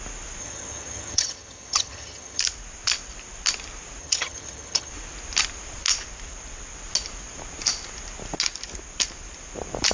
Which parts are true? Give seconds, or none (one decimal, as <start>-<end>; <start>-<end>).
0.0-0.4; 2.4-4.0; 4.9-9.9